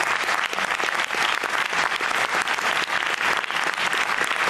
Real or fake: real